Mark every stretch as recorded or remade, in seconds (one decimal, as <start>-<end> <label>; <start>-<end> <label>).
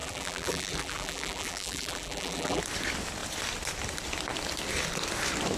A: 0.0-2.6 remade; 2.6-5.6 recorded